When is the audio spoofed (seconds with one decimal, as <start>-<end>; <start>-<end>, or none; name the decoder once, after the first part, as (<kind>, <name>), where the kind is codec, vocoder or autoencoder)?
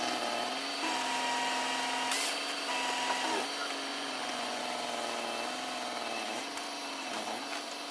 3.9-4.6 (vocoder, Vocos)